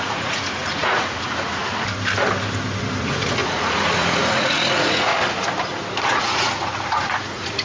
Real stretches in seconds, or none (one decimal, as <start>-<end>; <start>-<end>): 1.6-3.0; 5.1-6.0